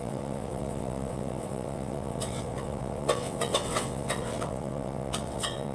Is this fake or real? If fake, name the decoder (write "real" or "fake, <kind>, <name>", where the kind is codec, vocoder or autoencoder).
fake, vocoder, WaveNeXt